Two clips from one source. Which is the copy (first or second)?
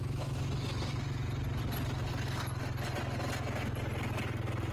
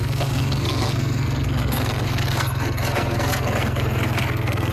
second